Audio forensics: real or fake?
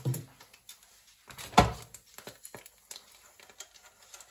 real